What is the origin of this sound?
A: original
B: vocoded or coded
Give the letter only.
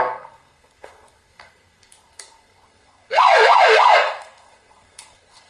B